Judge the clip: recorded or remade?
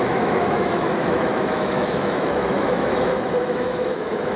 remade